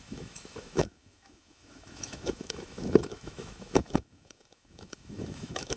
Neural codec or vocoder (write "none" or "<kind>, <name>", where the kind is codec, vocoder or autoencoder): autoencoder, DAC-VAE